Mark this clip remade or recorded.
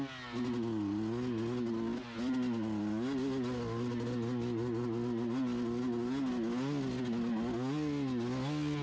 recorded